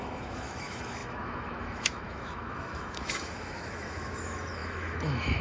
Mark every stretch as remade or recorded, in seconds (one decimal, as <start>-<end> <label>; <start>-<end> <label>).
0.0-5.4 remade